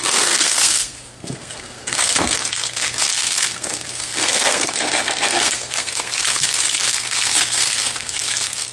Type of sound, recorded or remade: remade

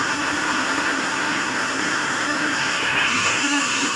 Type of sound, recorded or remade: remade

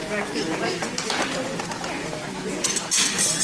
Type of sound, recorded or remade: recorded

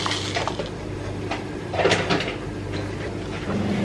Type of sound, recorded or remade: recorded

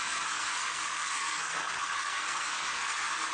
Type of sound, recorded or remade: remade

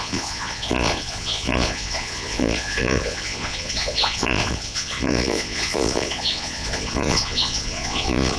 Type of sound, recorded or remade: remade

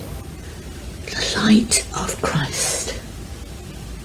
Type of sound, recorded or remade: recorded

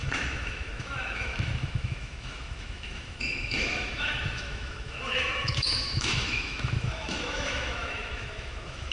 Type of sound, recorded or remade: remade